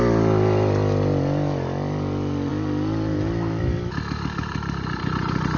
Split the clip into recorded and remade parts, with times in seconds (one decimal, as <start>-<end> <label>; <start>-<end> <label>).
0.0-5.6 recorded